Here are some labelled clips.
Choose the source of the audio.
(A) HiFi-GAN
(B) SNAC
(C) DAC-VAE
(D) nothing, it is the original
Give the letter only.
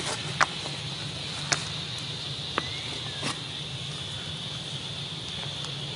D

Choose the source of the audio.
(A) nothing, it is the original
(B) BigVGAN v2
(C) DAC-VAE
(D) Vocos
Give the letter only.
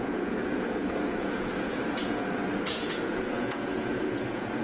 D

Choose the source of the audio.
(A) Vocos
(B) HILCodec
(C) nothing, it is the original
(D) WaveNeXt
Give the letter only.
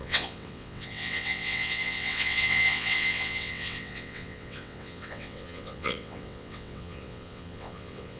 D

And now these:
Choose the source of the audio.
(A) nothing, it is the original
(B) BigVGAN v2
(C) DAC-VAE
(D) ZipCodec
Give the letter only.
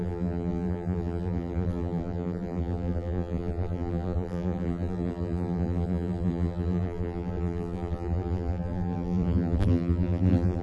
B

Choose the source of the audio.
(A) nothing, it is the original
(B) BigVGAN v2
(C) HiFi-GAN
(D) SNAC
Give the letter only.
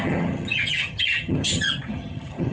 C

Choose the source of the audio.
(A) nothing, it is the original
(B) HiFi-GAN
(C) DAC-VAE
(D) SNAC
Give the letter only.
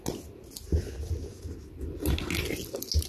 A